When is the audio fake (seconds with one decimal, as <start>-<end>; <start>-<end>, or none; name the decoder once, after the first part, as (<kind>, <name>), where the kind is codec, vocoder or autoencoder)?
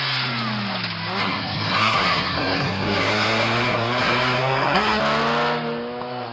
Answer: 1.2-5.0 (codec, SNAC)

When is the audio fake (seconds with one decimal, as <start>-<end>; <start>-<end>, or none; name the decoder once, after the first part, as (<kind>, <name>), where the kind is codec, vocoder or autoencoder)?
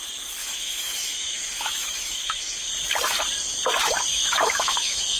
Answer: 0.4-2.7 (autoencoder, DAC-VAE); 4.1-5.2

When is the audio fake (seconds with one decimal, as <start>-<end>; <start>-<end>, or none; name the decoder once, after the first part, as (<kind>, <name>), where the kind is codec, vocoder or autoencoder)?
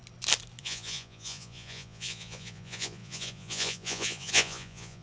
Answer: 0.6-5.0 (vocoder, Vocos)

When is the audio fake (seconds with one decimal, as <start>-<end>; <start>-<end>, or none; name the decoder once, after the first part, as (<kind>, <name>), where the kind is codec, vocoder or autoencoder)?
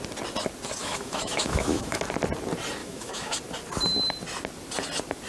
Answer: 0.8-2.0 (autoencoder, DAC-VAE); 2.8-3.4